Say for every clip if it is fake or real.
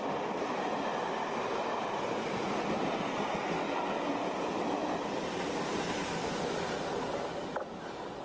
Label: real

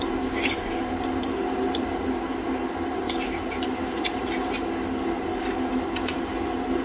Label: real